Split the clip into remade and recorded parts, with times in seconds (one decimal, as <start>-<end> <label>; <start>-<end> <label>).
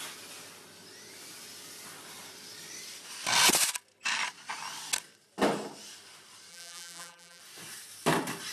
0.0-6.5 recorded; 6.5-7.4 remade; 7.4-8.5 recorded